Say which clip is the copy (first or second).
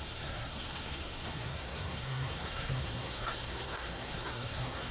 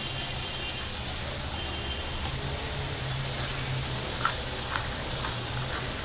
first